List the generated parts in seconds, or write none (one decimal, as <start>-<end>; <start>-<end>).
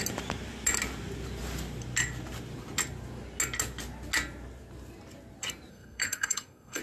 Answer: 5.7-6.8